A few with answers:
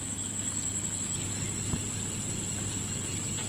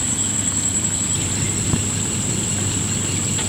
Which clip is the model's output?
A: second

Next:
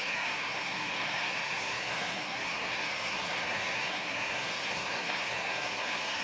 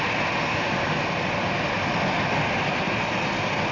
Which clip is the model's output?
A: first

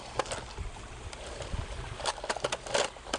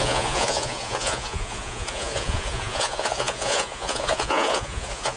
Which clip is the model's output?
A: second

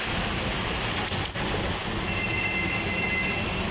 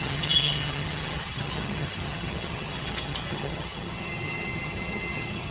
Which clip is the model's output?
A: second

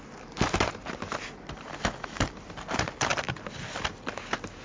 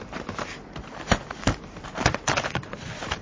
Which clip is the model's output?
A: second